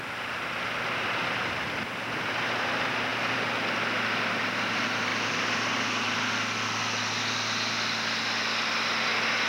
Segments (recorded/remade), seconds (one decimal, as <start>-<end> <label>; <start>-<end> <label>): 0.0-9.5 recorded